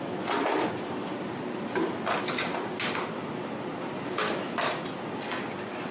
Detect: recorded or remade recorded